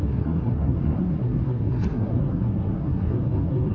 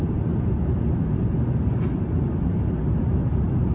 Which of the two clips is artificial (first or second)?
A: first